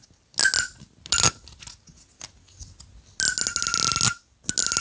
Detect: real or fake real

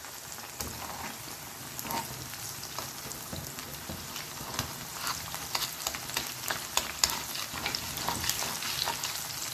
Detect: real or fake real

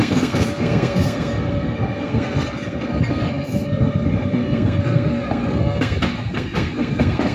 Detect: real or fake fake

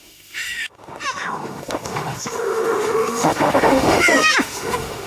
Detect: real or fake fake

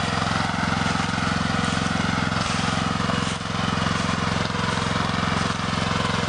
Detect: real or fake real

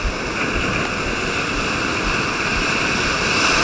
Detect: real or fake real